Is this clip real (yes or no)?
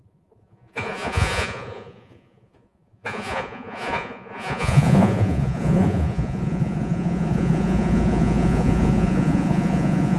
no